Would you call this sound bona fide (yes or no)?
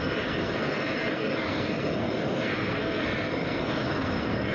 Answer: no